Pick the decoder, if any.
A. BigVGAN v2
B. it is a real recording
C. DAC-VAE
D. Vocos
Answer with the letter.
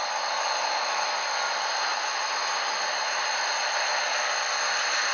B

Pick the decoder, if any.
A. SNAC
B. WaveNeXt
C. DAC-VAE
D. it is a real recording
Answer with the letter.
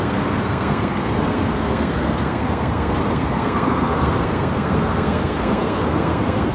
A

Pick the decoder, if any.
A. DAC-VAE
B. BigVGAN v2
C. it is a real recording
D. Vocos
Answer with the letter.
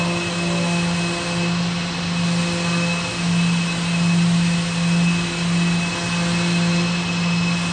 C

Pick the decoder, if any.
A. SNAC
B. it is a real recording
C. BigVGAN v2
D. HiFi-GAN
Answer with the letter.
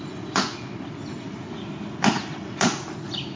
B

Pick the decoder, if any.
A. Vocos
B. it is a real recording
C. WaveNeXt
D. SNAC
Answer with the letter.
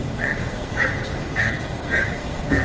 D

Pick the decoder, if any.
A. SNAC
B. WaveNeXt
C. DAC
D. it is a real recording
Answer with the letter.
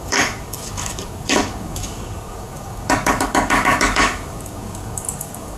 C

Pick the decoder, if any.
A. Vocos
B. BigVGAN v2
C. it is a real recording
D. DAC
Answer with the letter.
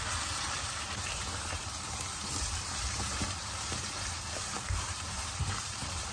B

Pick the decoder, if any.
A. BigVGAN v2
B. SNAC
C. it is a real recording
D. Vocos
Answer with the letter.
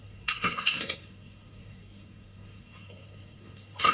B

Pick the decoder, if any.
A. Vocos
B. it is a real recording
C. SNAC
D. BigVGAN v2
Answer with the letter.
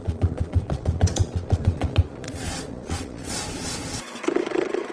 A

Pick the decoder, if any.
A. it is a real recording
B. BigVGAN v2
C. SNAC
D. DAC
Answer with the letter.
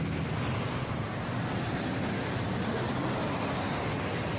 A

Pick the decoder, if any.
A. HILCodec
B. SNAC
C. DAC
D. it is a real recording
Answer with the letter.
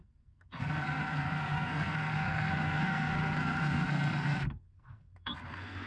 B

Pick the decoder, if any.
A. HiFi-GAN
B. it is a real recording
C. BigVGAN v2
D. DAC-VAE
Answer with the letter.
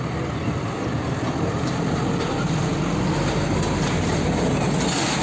B